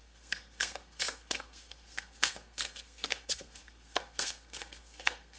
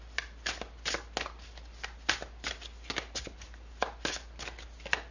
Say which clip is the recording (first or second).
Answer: second